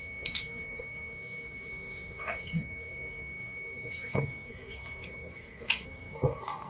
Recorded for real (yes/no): no